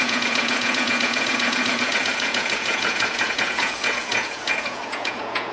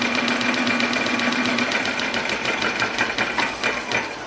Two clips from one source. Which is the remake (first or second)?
first